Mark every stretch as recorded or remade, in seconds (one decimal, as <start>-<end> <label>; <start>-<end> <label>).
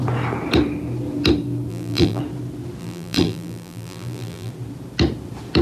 0.0-1.7 recorded; 1.7-2.2 remade; 2.2-2.8 recorded; 2.8-4.5 remade; 4.5-5.6 recorded